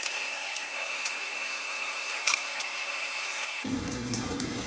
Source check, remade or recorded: remade